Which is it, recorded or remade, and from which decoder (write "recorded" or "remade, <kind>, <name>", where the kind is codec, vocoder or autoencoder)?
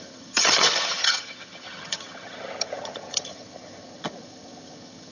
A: remade, vocoder, HiFi-GAN